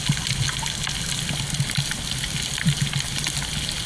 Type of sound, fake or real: real